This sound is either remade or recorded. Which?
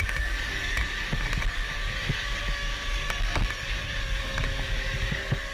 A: remade